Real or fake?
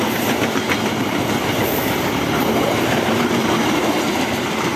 fake